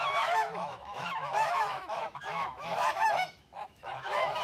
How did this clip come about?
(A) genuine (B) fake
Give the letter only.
B